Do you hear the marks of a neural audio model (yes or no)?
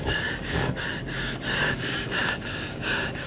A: yes